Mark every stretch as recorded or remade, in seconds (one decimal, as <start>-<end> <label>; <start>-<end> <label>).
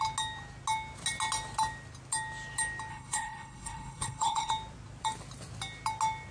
0.0-2.9 recorded; 2.9-4.5 remade; 4.5-6.3 recorded